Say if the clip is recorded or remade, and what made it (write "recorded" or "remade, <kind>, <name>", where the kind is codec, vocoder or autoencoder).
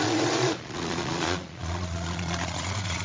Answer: remade, vocoder, Vocos